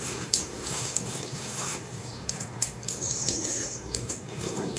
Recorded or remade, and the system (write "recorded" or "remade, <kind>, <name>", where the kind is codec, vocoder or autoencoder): remade, codec, SNAC